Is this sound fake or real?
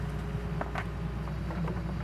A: real